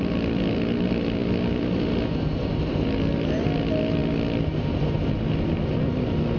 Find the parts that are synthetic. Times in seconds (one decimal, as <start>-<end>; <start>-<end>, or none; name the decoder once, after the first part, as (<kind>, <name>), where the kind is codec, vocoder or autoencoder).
none